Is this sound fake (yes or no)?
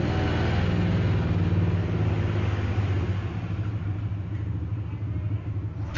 no